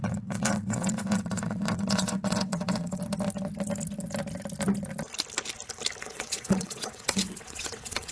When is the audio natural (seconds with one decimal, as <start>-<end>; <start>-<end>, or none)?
3.0-6.0